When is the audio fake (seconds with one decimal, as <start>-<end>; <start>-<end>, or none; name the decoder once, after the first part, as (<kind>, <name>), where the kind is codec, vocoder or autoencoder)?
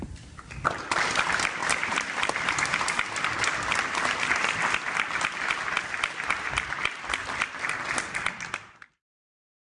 none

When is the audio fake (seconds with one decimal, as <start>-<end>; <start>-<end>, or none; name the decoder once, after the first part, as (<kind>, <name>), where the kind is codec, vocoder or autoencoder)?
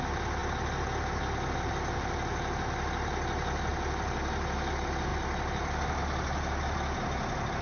3.7-4.3 (vocoder, BigVGAN v2); 5.1-6.0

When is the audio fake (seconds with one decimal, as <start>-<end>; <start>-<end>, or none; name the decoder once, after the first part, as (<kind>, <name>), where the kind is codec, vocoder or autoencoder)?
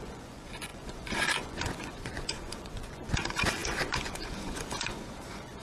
0.0-5.6 (vocoder, Vocos)